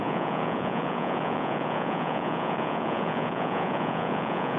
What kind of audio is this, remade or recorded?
remade